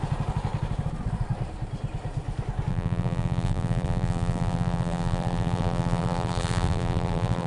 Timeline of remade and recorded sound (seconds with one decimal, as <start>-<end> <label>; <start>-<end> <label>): 0.0-2.7 recorded; 2.7-7.5 remade